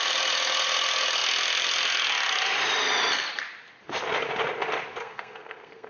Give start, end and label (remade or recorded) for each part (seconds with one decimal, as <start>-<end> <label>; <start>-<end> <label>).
0.0-5.0 recorded; 5.0-5.9 remade